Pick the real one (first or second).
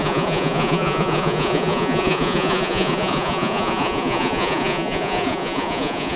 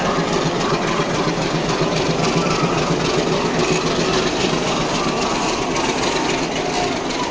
second